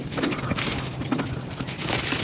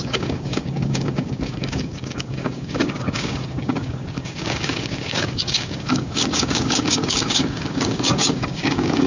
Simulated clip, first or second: second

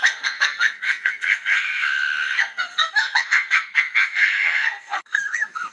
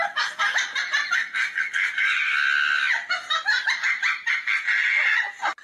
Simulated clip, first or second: first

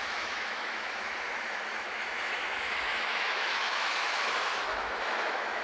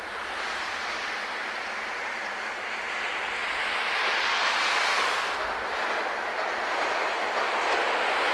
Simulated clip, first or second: first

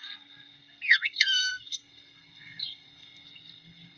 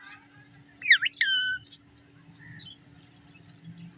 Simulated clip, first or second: first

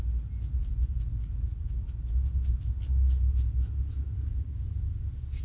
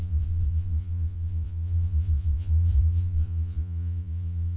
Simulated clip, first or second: second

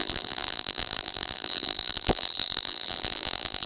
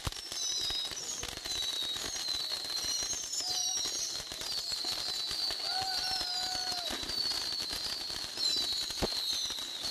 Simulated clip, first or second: first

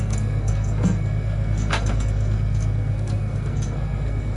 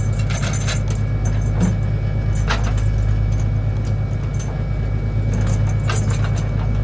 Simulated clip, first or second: first